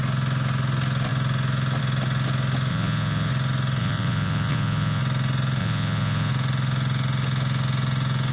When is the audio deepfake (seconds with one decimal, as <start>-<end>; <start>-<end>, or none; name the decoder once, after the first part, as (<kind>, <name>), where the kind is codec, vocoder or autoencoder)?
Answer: 2.7-3.3 (vocoder, Vocos); 3.8-5.0; 5.6-6.3